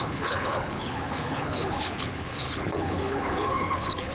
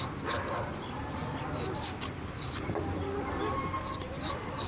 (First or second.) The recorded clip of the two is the second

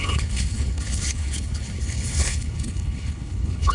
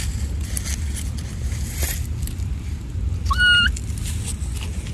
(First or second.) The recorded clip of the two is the second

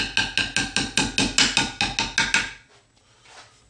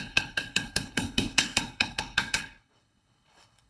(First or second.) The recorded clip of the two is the first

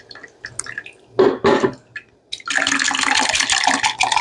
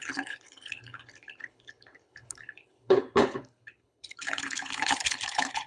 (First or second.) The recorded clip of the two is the first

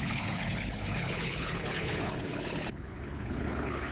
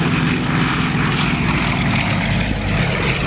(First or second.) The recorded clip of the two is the second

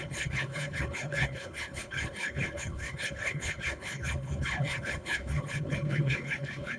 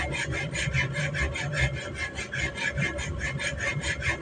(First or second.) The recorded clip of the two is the second